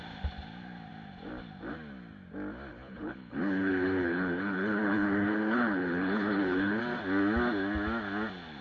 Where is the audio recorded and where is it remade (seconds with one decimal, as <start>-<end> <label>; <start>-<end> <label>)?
0.0-2.7 recorded; 2.7-6.8 remade; 6.8-8.6 recorded